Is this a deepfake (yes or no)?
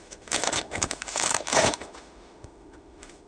yes